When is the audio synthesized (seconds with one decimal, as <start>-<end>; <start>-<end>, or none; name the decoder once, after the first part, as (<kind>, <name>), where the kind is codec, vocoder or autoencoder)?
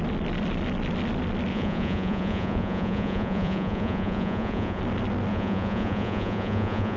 1.5-4.8 (vocoder, Vocos); 5.3-7.0